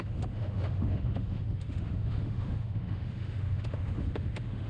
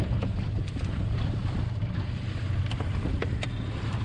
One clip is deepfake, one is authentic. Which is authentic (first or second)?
second